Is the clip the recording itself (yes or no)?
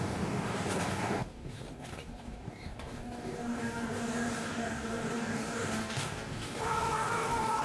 no